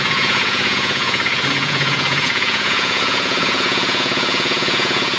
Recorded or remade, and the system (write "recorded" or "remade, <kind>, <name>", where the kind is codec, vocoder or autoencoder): remade, vocoder, Vocos